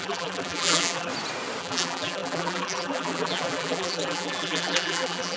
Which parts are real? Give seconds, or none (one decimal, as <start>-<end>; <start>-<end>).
1.1-1.6